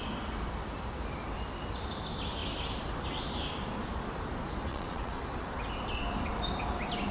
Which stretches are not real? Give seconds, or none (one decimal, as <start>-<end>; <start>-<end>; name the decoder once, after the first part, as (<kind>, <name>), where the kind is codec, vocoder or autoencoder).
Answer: 4.7-5.2 (vocoder, Vocos)